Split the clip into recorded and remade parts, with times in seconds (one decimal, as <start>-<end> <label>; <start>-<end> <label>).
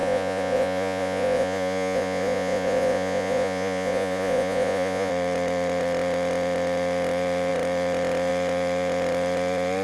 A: 0.0-5.1 remade; 5.1-9.8 recorded